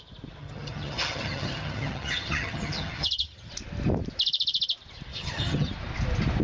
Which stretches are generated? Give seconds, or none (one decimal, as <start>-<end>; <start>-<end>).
0.4-3.5; 5.1-5.7